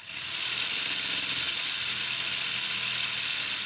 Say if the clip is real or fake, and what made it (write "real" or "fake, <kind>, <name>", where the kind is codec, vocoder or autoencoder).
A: real